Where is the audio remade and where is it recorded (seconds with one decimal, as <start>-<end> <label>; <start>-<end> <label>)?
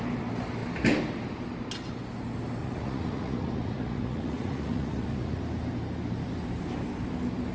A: 0.0-2.6 recorded; 2.6-5.4 remade; 5.4-7.5 recorded